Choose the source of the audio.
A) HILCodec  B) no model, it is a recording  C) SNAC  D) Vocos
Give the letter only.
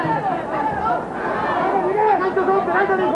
B